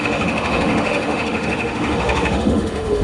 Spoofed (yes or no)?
yes